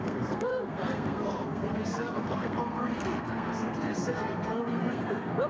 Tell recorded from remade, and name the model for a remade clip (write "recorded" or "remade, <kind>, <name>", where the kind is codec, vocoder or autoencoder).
remade, codec, SNAC